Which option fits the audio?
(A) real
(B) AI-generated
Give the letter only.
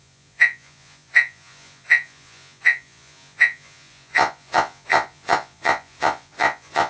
B